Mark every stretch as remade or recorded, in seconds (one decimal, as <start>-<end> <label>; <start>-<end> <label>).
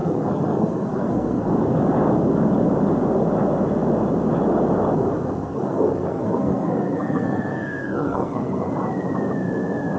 0.0-1.5 remade; 1.5-5.4 recorded; 5.4-8.7 remade; 8.7-10.0 recorded